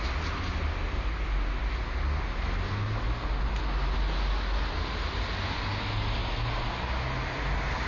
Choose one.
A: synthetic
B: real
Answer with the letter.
B